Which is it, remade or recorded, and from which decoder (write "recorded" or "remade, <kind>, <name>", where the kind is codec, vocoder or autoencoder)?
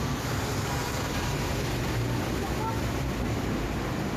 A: recorded